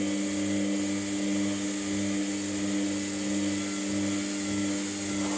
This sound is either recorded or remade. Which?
recorded